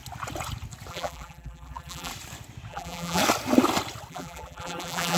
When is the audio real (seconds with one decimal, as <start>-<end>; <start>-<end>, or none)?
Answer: 0.0-0.9; 2.1-2.7; 3.2-4.1